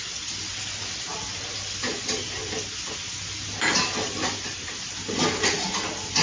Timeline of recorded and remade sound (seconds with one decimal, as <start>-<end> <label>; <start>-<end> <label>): 0.0-6.2 recorded